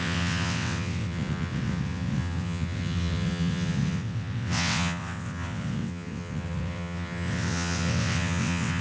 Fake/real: fake